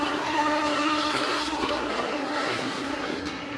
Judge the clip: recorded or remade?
remade